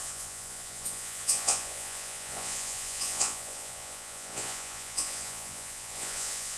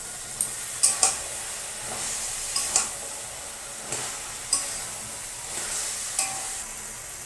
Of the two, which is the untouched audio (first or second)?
second